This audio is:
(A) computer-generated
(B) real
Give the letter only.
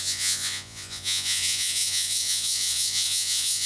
A